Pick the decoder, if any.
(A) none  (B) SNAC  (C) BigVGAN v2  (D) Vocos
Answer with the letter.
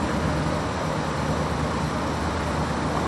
A